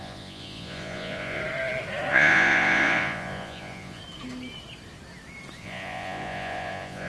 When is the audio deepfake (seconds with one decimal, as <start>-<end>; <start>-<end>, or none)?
0.0-1.4; 2.1-4.0; 5.6-7.1